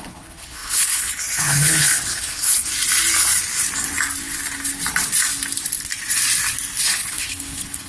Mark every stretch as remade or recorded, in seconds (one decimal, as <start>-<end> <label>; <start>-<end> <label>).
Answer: 0.0-2.7 remade; 2.7-6.8 recorded; 6.8-7.9 remade